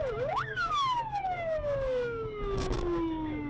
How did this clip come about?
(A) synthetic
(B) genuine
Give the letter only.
A